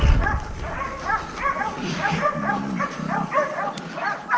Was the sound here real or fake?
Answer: real